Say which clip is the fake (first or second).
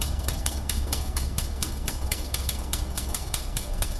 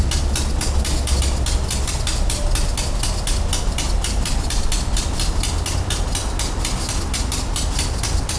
first